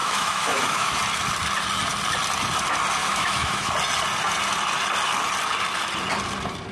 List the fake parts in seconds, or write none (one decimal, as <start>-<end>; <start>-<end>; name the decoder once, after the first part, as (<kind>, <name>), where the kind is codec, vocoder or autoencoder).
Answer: 0.0-1.0 (autoencoder, DAC-VAE); 3.0-3.7